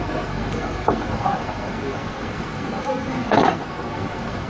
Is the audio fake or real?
fake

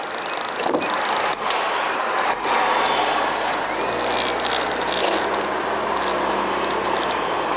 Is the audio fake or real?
real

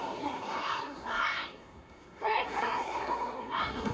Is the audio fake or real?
fake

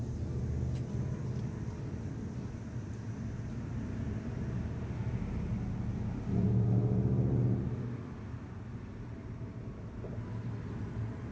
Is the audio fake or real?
real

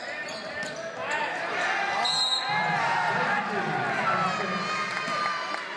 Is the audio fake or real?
real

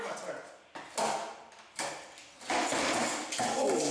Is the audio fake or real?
real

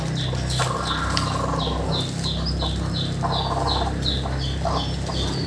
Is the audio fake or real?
real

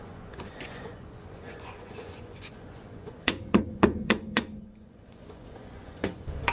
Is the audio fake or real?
fake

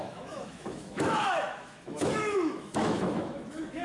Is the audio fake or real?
fake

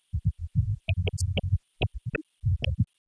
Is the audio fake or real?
real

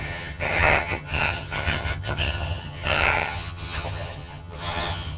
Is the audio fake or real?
fake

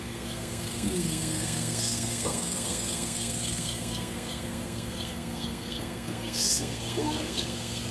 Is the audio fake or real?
fake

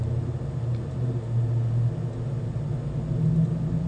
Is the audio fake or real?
real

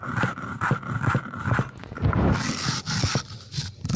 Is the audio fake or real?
real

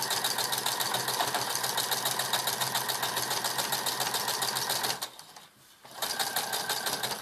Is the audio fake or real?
real